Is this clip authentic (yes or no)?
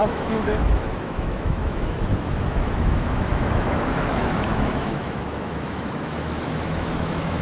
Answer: no